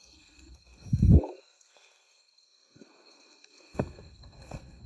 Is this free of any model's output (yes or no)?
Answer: no